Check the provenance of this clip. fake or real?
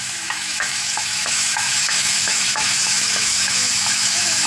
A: fake